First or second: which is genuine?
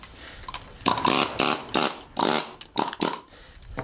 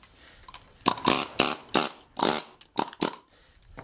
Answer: first